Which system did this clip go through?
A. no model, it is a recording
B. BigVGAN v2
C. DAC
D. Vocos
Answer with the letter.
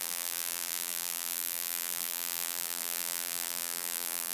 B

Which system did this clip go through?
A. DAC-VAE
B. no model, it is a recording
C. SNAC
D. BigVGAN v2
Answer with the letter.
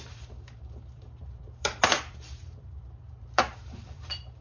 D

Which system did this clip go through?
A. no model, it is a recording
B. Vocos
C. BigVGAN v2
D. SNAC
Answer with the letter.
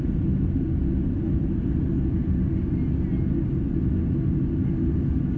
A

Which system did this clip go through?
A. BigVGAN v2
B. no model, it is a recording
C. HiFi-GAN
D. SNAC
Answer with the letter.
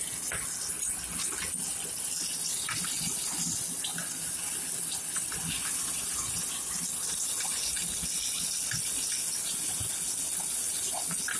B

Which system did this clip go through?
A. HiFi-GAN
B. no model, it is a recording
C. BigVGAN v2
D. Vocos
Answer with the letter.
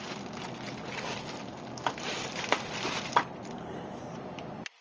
C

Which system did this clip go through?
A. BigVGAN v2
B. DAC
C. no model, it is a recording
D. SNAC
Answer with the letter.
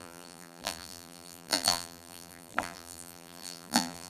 A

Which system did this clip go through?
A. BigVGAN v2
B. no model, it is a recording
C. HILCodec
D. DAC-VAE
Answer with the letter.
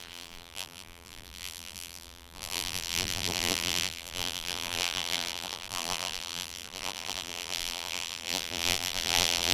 A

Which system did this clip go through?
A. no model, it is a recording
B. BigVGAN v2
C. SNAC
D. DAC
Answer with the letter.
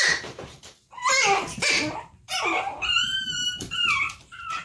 B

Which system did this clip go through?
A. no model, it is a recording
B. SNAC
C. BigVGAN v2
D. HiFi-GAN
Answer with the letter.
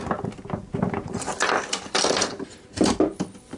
A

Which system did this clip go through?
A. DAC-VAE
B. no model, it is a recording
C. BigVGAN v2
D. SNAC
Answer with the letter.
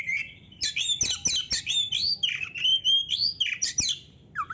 B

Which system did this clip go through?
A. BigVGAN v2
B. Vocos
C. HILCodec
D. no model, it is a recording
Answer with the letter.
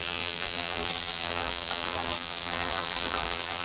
A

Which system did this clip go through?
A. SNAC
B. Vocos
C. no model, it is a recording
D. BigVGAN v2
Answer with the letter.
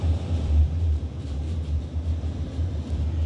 D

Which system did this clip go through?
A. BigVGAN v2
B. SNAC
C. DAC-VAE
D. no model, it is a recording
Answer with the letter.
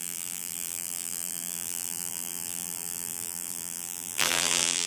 A